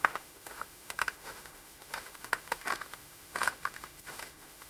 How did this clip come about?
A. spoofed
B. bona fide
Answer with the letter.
A